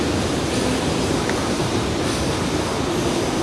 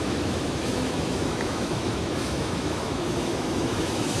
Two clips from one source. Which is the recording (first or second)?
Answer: first